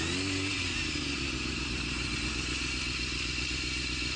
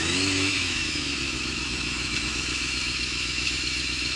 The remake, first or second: second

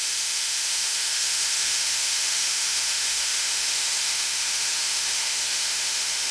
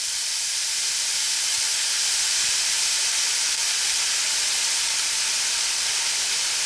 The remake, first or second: first